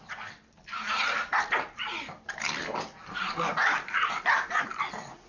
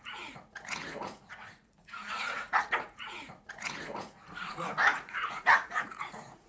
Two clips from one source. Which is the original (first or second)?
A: first